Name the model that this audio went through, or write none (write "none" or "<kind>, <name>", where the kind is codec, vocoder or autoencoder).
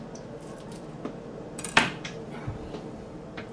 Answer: vocoder, BigVGAN v2